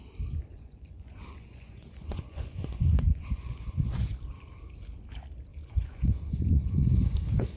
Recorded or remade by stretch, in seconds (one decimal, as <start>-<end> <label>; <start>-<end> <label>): 0.0-0.5 recorded; 0.5-4.1 remade; 4.1-5.5 recorded; 5.5-7.6 remade